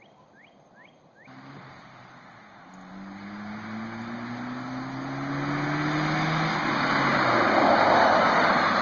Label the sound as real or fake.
real